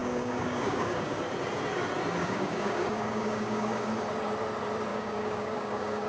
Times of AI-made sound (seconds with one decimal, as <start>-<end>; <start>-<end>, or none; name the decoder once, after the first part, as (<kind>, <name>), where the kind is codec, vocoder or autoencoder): 0.0-1.2 (codec, DAC); 2.2-3.9; 4.9-6.1